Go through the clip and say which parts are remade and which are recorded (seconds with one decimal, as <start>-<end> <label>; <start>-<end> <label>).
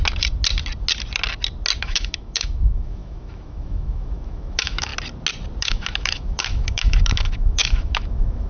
0.0-1.8 recorded; 1.8-4.9 remade; 4.9-5.6 recorded; 5.6-8.5 remade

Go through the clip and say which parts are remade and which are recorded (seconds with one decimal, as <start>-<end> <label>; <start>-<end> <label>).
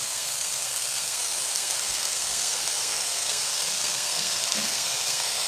0.0-5.5 remade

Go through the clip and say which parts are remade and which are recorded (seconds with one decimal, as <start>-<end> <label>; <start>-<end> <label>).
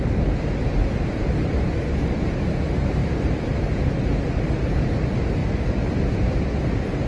0.0-0.8 recorded; 0.8-2.4 remade; 2.4-3.0 recorded; 3.0-4.2 remade; 4.2-7.1 recorded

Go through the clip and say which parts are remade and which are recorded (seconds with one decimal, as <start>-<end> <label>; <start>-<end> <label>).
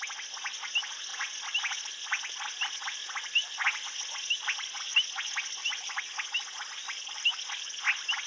0.0-5.6 recorded; 5.6-6.2 remade; 6.2-8.3 recorded